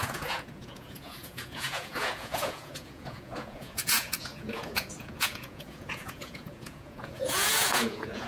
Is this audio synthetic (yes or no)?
yes